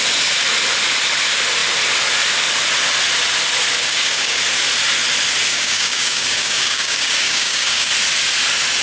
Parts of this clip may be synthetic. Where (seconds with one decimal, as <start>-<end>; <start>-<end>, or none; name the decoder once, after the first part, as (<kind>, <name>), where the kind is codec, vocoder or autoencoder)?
3.8-4.4 (codec, DAC); 5.5-7.9